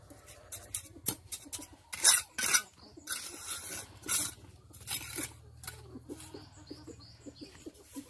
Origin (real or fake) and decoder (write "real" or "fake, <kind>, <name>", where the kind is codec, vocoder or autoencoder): real